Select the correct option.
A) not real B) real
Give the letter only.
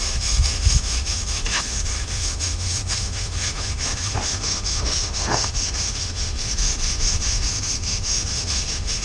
A